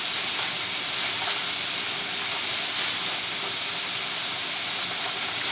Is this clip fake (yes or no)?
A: no